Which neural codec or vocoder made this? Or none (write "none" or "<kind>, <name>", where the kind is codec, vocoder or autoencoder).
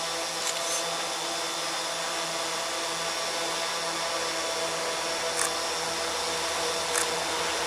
none